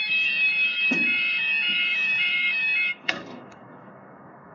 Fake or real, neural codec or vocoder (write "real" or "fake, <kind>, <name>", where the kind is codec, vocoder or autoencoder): fake, autoencoder, DAC-VAE